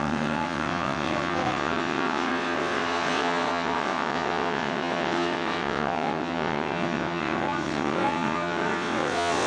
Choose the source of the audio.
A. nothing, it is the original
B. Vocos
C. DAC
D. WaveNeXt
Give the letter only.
D